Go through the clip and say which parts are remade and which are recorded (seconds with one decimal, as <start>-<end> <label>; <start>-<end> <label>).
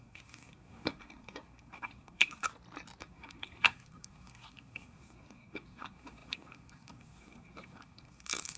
0.0-2.5 remade; 2.5-3.0 recorded; 3.0-8.6 remade